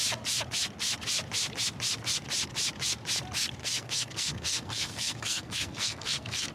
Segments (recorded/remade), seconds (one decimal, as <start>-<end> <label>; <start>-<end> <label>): 0.0-3.6 recorded; 3.6-6.5 remade